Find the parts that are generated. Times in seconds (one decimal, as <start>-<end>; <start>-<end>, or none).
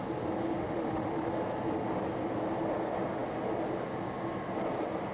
0.6-1.3